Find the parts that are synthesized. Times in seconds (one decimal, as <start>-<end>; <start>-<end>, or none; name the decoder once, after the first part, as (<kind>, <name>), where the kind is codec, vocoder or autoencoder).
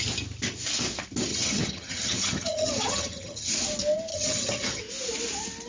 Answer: 1.3-3.5 (vocoder, HiFi-GAN); 4.1-4.8